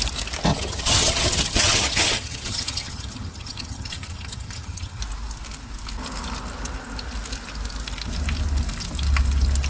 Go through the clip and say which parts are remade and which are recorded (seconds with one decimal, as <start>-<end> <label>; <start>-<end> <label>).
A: 0.0-0.5 recorded; 0.5-5.0 remade; 5.0-9.7 recorded